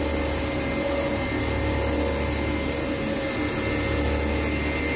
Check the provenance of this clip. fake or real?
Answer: real